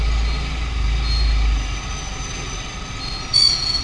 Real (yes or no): yes